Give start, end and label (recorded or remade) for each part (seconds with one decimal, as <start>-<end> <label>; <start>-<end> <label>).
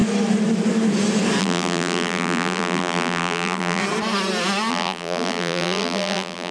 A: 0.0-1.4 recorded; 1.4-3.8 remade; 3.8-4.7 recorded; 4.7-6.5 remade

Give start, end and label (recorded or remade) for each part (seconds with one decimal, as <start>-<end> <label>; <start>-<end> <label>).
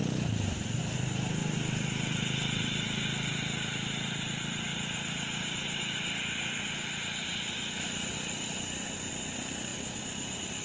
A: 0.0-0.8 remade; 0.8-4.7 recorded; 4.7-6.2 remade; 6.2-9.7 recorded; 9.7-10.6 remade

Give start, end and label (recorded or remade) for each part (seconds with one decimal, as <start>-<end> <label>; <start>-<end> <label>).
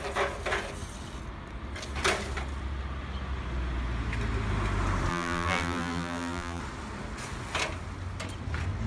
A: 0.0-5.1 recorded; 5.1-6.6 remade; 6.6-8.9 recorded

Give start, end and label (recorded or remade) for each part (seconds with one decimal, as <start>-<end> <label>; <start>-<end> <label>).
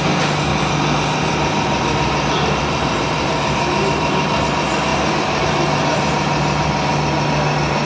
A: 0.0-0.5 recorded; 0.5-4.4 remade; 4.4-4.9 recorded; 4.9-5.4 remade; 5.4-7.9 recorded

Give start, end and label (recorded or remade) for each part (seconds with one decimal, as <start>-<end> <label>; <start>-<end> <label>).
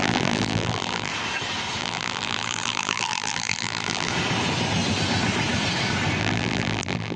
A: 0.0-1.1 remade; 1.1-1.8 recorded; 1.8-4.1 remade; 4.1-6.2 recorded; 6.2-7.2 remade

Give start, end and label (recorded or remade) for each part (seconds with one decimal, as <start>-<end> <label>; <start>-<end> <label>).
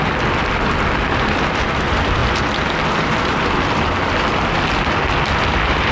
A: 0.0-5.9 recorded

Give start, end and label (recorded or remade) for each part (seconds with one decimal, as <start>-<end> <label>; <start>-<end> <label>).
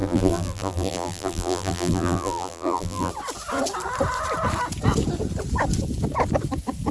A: 0.0-3.1 remade; 3.1-6.9 recorded